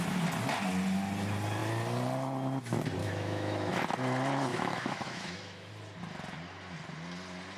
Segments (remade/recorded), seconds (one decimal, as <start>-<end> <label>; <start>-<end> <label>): 0.0-3.0 recorded; 3.0-3.8 remade; 3.8-4.5 recorded; 4.5-5.7 remade; 5.7-7.6 recorded